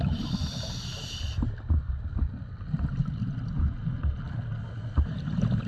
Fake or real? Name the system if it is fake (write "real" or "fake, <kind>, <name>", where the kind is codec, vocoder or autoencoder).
real